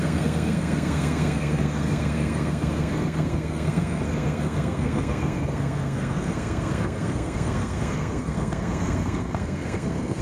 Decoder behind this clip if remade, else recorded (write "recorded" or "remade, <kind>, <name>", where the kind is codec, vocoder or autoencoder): remade, codec, SNAC